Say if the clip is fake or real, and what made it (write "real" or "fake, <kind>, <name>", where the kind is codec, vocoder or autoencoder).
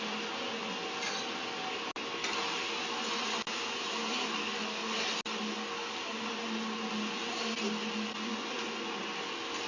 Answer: real